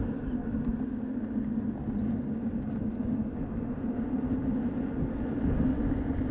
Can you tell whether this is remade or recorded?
recorded